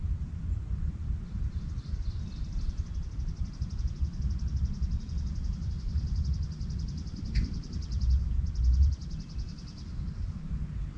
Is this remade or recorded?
recorded